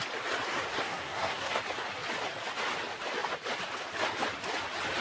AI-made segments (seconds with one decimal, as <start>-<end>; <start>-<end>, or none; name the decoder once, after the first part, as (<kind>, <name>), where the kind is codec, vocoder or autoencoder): 0.7-1.6 (codec, SNAC)

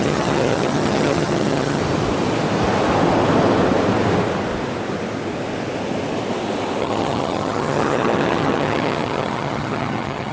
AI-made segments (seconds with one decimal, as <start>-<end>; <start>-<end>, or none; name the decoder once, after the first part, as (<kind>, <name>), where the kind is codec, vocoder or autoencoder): 0.0-1.8 (vocoder, HiFi-GAN); 6.8-10.3

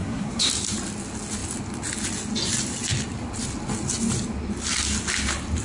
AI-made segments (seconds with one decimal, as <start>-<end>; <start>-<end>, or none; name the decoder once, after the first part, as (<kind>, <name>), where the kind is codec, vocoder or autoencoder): 0.0-0.5 (codec, SNAC)

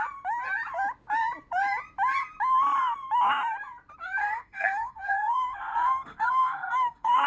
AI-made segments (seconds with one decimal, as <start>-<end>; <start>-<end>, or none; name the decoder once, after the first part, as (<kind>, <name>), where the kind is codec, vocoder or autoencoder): 4.2-7.3 (codec, SNAC)

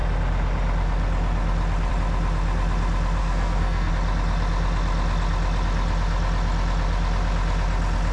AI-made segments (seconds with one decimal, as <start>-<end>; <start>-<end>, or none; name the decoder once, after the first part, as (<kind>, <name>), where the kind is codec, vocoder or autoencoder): 3.2-3.9 (codec, SNAC)

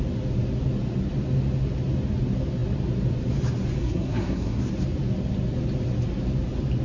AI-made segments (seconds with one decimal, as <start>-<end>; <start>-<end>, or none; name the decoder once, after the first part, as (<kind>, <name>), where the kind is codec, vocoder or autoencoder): 3.8-4.6 (codec, SNAC)

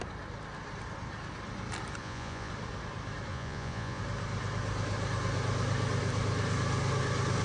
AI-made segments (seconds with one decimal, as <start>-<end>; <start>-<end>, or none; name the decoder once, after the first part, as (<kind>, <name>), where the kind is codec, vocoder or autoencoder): 2.0-2.5 (vocoder, Vocos); 3.3-4.0

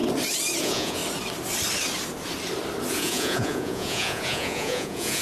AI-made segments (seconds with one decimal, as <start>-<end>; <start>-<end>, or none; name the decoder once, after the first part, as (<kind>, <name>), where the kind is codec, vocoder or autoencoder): 0.6-1.0 (vocoder, Vocos); 2.9-5.2